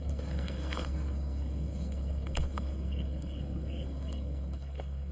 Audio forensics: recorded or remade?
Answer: remade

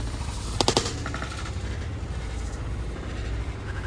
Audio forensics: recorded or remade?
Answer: recorded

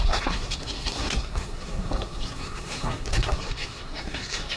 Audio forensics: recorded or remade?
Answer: remade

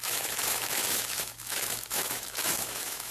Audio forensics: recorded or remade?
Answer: remade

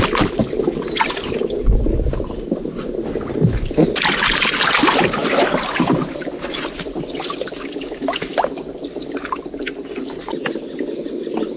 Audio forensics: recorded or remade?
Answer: recorded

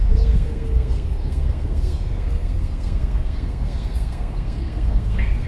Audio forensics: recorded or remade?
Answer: remade